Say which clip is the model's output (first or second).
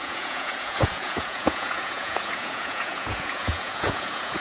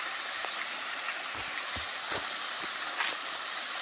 first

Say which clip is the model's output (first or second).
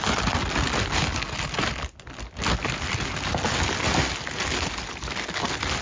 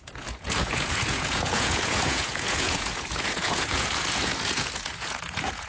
second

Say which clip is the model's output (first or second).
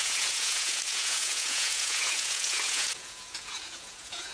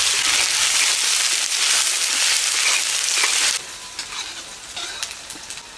first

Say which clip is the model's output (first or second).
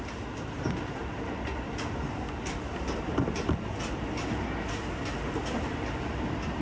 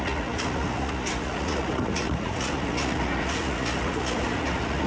second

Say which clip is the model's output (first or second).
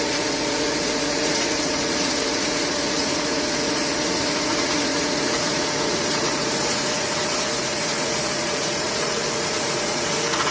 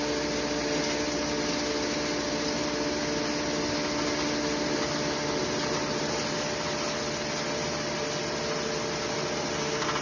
first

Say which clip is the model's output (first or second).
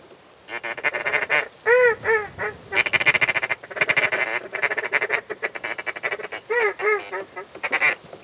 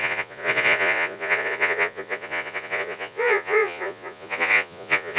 second